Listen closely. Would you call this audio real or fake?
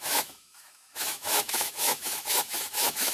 fake